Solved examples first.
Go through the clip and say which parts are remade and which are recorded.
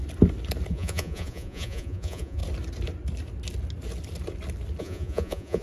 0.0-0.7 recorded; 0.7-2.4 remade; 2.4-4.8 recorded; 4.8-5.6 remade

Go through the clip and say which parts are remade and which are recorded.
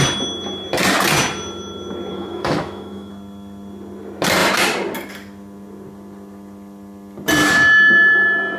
0.0-2.1 recorded; 2.1-3.1 remade; 3.1-8.6 recorded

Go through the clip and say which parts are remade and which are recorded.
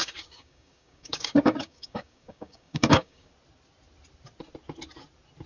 0.0-3.3 remade; 3.3-5.5 recorded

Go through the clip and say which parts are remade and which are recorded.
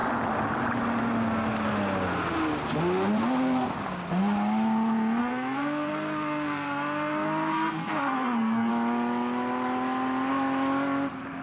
0.0-5.2 recorded; 5.2-8.7 remade; 8.7-11.4 recorded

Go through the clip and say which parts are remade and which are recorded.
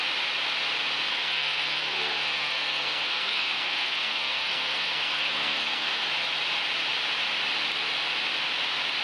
0.0-1.1 recorded; 1.1-6.1 remade; 6.1-9.0 recorded